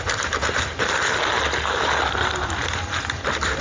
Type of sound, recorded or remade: recorded